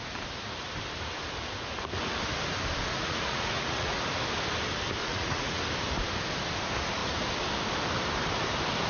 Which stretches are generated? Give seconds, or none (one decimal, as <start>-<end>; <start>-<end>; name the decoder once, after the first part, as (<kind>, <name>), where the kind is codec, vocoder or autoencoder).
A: 2.9-4.0 (vocoder, Vocos); 5.0-5.6